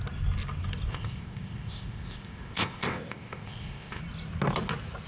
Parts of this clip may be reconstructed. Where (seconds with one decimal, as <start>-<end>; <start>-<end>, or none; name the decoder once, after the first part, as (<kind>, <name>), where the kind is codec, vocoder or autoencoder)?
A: 0.9-4.0 (codec, ZipCodec)